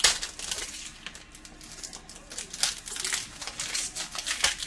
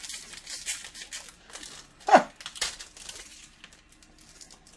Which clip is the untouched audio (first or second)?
first